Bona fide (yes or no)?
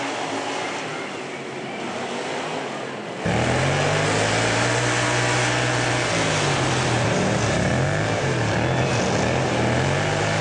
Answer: yes